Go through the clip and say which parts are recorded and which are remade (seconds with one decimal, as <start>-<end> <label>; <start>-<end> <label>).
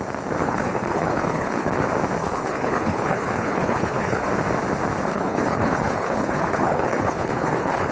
0.0-0.4 recorded; 0.4-1.7 remade; 1.7-2.2 recorded; 2.2-4.3 remade; 4.3-5.1 recorded; 5.1-7.9 remade